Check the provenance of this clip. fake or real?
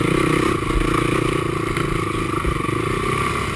real